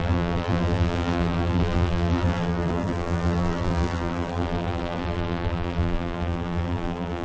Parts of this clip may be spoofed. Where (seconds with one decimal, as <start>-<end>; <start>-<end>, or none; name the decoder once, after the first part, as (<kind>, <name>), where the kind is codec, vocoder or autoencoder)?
0.0-7.2 (vocoder, BigVGAN v2)